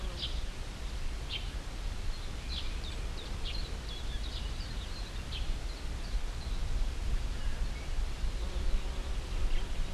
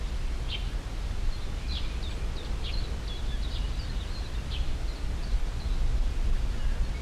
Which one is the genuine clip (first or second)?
second